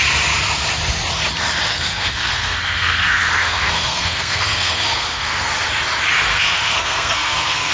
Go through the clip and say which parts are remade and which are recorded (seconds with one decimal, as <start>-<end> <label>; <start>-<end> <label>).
0.0-1.7 recorded; 1.7-5.5 remade; 5.5-6.3 recorded; 6.3-7.7 remade